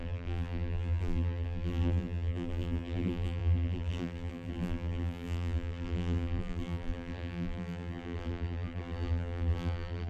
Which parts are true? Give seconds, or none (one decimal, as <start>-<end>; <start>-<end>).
none